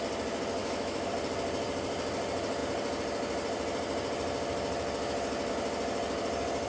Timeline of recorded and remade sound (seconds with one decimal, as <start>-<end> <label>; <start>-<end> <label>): 0.0-0.6 recorded; 0.6-1.1 remade; 1.1-6.7 recorded